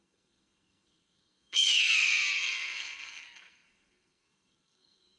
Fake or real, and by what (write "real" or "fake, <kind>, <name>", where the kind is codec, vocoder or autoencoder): fake, codec, SNAC